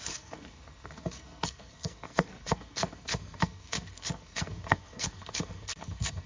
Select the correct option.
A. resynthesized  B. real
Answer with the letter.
A